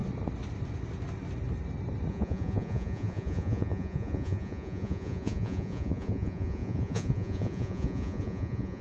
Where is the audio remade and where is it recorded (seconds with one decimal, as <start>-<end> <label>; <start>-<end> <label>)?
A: 0.0-2.1 recorded; 2.1-8.8 remade